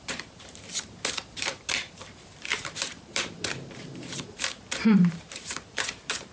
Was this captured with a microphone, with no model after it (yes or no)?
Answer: no